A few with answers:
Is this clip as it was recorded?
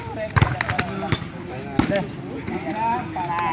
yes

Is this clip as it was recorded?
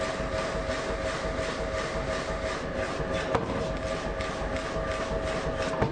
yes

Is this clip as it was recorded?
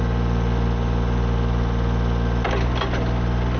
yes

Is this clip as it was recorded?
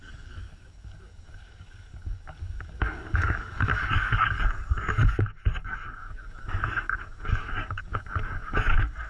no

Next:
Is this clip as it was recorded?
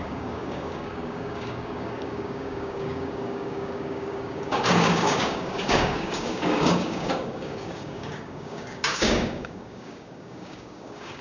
no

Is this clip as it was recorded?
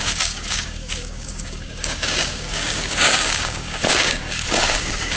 no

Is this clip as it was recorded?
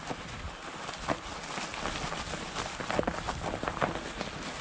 yes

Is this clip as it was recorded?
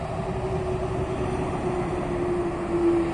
yes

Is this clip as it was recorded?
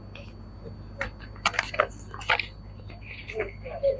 yes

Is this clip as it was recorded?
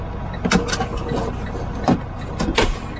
yes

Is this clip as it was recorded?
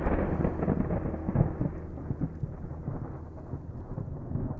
yes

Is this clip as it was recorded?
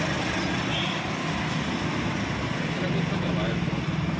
yes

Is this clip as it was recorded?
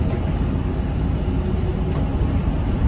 yes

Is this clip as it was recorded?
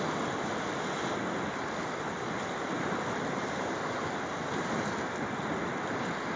yes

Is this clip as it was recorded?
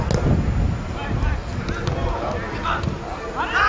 yes